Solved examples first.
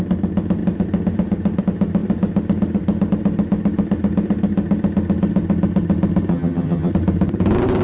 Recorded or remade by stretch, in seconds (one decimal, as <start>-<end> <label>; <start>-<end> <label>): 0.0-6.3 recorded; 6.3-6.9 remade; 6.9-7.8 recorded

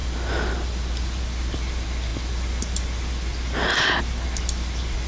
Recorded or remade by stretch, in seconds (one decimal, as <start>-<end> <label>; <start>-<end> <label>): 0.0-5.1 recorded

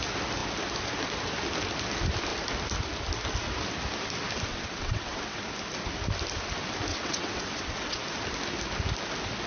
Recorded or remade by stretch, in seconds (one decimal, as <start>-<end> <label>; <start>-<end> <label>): 0.0-4.5 recorded; 4.5-5.4 remade; 5.4-6.9 recorded; 6.9-8.0 remade; 8.0-9.5 recorded